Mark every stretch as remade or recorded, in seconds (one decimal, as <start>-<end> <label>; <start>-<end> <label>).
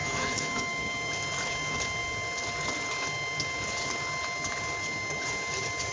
0.0-1.1 remade; 1.1-5.9 recorded